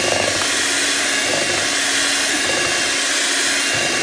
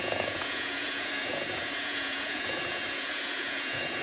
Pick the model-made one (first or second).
second